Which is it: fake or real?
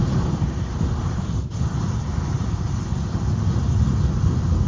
real